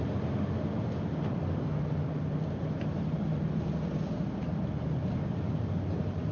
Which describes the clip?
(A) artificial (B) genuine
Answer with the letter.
B